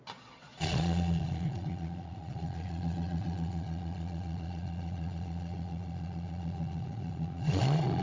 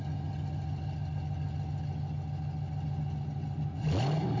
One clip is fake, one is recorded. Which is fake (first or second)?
first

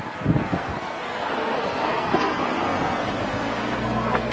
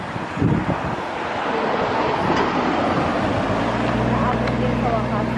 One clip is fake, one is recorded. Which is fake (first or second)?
first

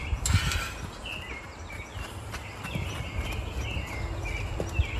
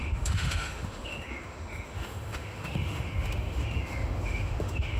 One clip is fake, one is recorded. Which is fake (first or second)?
second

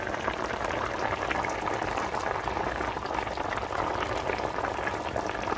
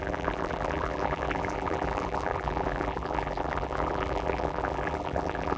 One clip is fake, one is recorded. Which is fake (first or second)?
second